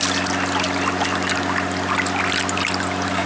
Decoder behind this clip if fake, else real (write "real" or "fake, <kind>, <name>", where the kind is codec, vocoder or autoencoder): real